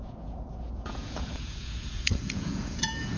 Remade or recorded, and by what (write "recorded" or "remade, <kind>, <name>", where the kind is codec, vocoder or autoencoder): remade, vocoder, Vocos